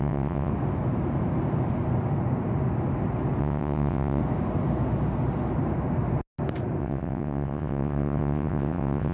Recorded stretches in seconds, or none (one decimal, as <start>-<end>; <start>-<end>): 0.5-3.4; 4.2-6.8